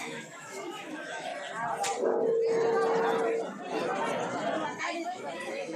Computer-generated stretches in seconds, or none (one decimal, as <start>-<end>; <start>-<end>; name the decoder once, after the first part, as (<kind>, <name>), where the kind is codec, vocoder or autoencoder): 0.0-1.3 (autoencoder, DAC-VAE); 4.8-5.8

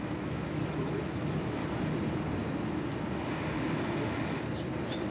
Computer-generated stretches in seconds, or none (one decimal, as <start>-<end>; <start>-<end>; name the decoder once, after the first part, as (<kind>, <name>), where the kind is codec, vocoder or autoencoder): 0.0-1.6 (autoencoder, DAC-VAE)

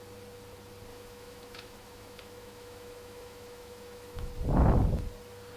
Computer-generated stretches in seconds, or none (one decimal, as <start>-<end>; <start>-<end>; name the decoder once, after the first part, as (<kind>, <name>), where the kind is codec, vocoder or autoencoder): 0.9-4.3 (autoencoder, DAC-VAE)

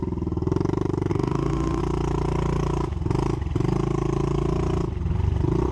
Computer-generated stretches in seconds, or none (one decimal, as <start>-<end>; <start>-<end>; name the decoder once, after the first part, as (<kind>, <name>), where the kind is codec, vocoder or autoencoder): 1.1-1.8 (autoencoder, DAC-VAE)

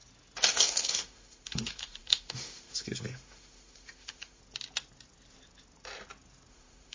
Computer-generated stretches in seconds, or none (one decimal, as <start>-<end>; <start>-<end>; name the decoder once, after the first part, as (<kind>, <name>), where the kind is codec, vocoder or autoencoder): 0.5-4.4 (autoencoder, DAC-VAE); 6.5-6.9